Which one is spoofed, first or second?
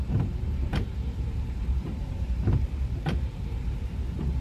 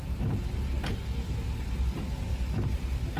first